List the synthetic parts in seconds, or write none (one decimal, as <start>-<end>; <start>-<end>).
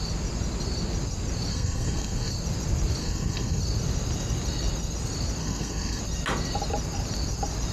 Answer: 1.5-2.3; 3.0-3.6; 5.4-6.0